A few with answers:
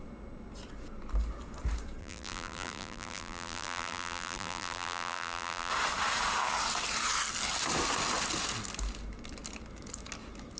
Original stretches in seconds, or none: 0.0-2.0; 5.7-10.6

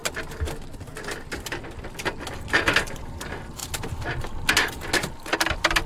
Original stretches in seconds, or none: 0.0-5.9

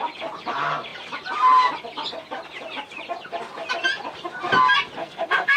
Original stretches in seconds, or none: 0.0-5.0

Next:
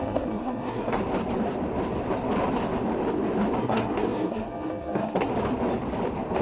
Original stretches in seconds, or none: 1.0-3.6; 5.3-6.4